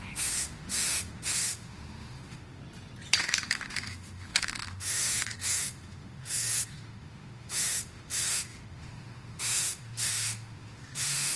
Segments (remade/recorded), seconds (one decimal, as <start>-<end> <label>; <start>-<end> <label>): 0.0-2.6 remade; 2.6-3.2 recorded; 3.2-11.4 remade

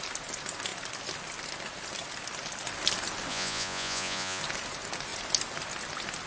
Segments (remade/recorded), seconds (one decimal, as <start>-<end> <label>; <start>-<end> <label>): 0.0-3.3 recorded; 3.3-4.4 remade; 4.4-6.3 recorded

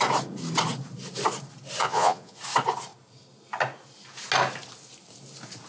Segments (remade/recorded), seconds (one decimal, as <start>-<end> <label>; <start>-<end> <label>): 0.0-1.8 recorded; 1.8-2.4 remade; 2.4-5.7 recorded